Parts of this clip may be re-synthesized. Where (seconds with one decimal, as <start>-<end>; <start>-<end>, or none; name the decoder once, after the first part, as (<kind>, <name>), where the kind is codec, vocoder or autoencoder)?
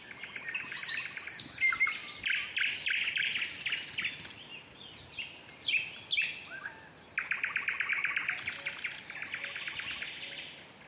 none